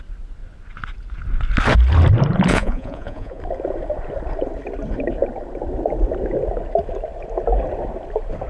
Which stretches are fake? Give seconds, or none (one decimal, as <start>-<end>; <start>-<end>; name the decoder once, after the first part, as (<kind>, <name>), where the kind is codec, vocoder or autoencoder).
2.5-3.4 (vocoder, Vocos)